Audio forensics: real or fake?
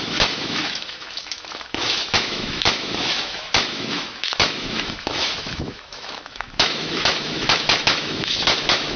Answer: fake